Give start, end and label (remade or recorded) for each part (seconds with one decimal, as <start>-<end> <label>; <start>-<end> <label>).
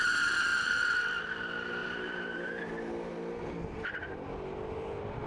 0.0-0.5 recorded; 0.5-1.2 remade; 1.2-1.8 recorded; 1.8-2.6 remade; 2.6-5.3 recorded